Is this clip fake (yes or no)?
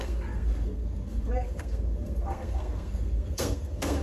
yes